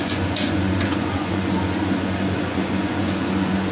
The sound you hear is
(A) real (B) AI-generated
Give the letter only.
B